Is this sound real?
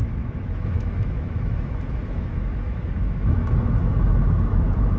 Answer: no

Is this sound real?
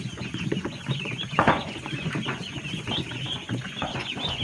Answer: no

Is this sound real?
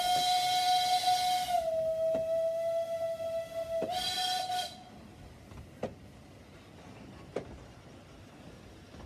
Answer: yes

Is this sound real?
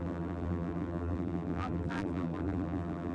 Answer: no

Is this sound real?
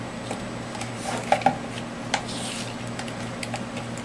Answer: yes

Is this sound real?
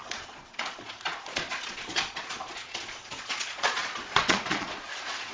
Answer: no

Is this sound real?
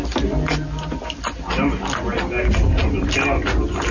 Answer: yes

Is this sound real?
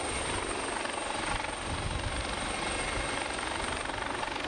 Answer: yes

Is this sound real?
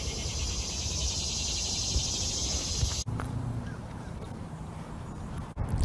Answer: no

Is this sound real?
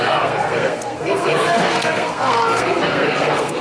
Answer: no